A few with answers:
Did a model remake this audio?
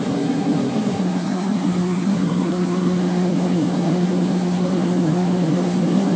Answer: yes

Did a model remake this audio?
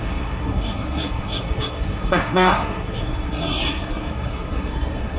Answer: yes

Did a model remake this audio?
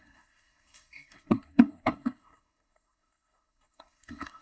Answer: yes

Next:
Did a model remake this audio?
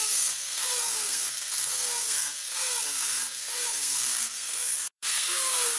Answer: yes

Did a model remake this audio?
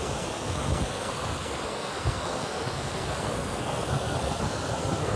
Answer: yes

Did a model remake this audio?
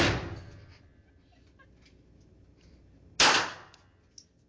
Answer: no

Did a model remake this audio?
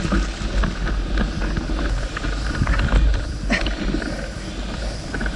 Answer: no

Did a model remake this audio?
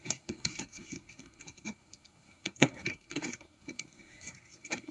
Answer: yes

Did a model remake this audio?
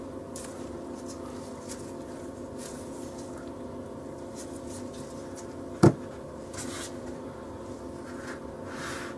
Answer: no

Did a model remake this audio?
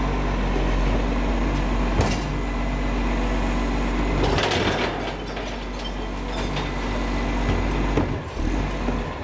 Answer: no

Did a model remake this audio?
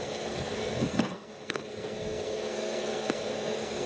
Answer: yes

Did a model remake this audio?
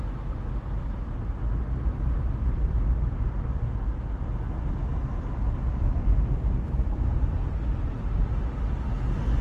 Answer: no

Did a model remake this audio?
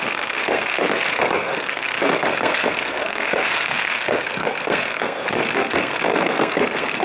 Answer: yes